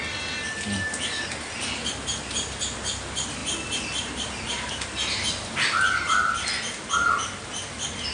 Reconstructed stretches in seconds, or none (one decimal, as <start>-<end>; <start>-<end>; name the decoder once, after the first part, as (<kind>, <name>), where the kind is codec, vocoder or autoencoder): none

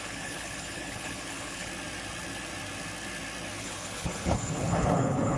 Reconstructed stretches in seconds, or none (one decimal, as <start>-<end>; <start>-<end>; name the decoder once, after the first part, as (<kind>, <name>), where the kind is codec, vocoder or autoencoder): 0.0-1.7 (codec, HILCodec); 3.6-5.4

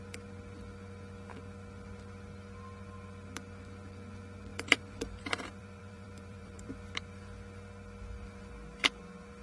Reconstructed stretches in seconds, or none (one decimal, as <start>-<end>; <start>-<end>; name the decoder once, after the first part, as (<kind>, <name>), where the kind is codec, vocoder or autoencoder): 4.5-6.7 (vocoder, BigVGAN v2)

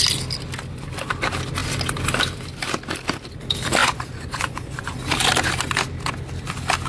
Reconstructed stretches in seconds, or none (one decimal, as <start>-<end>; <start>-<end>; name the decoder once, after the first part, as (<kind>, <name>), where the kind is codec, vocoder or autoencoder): 3.8-4.9 (vocoder, Vocos)

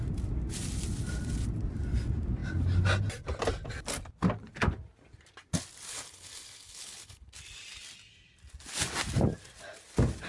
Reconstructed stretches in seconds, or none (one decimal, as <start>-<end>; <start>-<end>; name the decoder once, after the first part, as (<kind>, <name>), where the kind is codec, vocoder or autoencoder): 5.9-7.3 (codec, HILCodec)

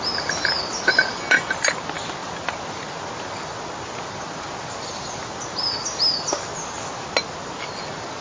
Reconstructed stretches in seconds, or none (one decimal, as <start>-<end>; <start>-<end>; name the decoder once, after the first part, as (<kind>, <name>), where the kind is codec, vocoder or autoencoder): none